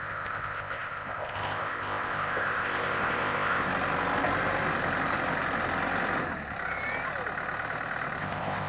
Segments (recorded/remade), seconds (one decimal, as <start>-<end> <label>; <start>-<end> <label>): 0.0-3.7 remade; 3.7-8.2 recorded; 8.2-8.7 remade